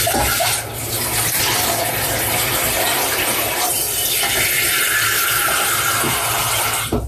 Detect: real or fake real